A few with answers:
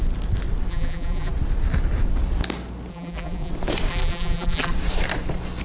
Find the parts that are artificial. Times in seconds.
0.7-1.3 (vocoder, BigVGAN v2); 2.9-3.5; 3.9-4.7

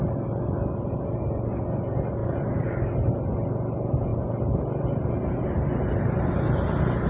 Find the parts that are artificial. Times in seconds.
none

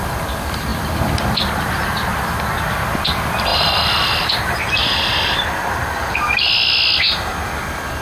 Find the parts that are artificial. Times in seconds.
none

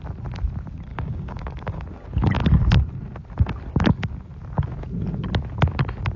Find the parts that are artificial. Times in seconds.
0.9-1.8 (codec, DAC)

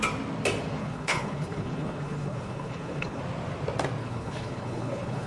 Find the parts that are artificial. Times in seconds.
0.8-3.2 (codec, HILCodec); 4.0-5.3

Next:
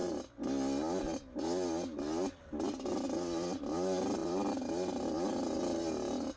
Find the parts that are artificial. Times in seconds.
none

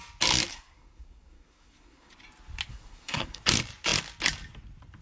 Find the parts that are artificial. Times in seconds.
0.5-2.1 (codec, SNAC); 2.7-3.4